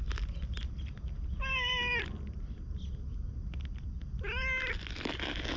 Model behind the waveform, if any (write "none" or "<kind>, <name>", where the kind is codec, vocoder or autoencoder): none